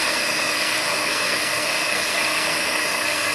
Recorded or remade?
remade